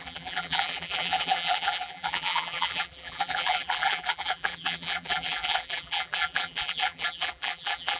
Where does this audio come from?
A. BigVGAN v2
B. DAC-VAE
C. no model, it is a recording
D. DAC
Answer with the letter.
A